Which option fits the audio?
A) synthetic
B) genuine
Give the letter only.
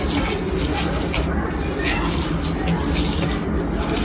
B